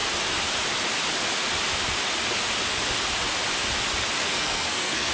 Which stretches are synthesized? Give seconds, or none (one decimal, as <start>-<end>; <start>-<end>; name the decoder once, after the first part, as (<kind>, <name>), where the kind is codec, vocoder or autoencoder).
4.2-5.1 (codec, SNAC)